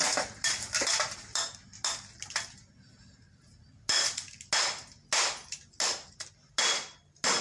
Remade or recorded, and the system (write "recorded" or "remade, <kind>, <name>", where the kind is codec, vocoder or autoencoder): recorded